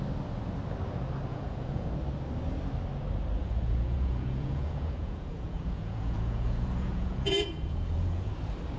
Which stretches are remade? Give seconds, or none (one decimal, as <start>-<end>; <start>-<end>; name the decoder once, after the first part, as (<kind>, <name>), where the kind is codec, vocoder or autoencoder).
1.3-1.9 (vocoder, Vocos); 3.4-8.3